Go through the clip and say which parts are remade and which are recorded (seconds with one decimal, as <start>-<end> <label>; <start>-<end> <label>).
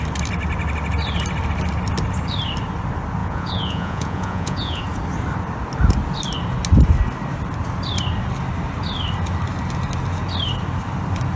0.0-3.2 recorded; 3.2-4.8 remade; 4.8-11.4 recorded